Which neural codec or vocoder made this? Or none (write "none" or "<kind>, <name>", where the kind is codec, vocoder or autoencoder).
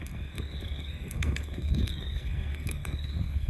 codec, SNAC